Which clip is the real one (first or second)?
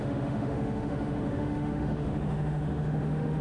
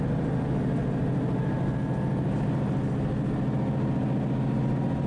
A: second